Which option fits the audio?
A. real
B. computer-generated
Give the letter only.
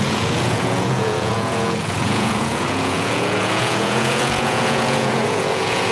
B